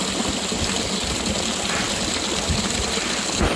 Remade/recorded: recorded